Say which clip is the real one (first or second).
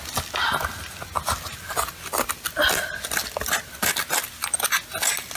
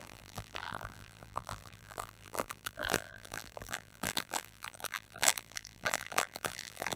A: first